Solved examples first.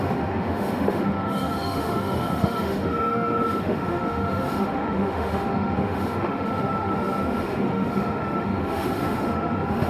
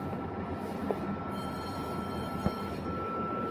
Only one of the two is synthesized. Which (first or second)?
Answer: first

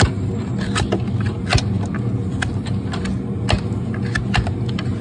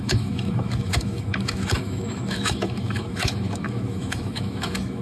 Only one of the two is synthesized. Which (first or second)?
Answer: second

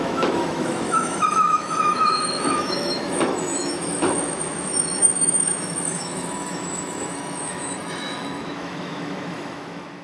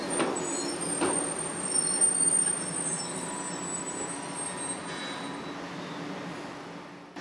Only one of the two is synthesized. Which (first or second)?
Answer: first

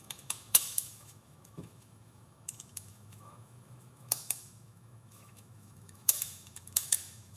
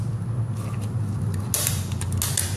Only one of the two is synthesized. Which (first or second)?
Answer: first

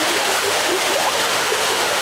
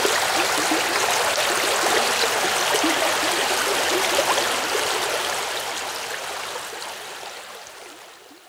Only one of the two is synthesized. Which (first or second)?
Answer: first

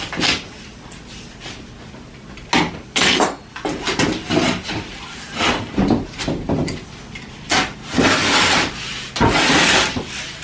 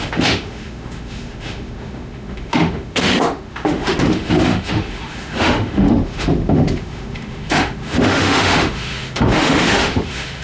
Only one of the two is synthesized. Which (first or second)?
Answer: second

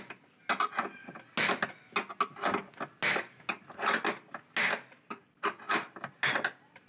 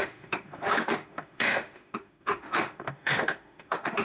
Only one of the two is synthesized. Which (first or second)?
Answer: second